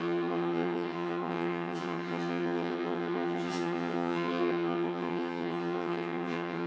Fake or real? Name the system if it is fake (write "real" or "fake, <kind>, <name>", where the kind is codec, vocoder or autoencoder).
fake, vocoder, HiFi-GAN